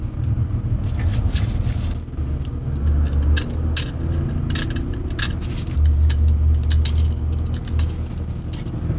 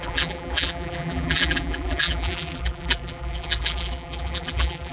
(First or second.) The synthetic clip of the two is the second